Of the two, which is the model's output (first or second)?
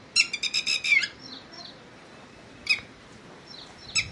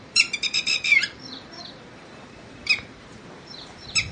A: second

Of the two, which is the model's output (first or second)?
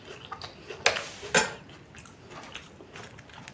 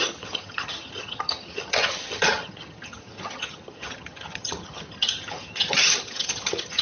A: second